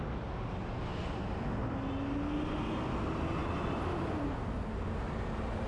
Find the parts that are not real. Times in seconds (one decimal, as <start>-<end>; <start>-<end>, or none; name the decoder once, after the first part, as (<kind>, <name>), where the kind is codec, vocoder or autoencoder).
none